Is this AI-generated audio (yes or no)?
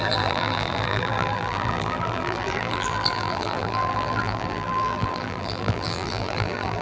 yes